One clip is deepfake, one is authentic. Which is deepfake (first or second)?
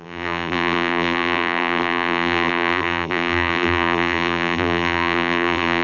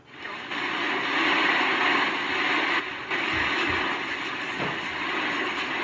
first